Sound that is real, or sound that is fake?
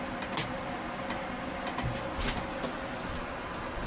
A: real